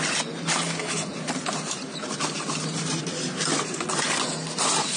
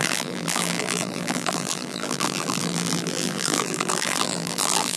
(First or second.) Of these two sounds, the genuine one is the first